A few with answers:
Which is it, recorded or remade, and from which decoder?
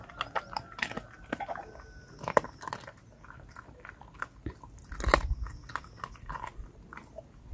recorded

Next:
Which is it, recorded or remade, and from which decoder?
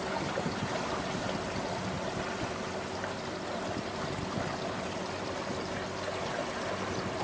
recorded